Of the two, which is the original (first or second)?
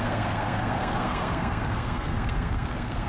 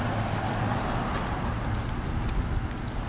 second